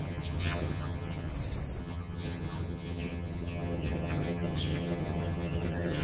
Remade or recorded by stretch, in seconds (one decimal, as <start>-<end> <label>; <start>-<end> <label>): 0.0-1.3 remade; 1.3-1.8 recorded; 1.8-6.0 remade